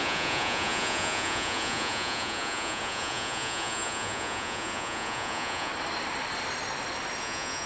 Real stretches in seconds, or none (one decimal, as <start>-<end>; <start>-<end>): 5.7-7.2